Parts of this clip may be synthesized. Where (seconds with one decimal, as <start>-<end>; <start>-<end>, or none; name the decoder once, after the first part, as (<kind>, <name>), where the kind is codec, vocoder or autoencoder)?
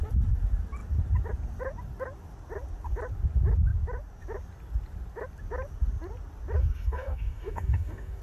6.6-8.2 (codec, DAC)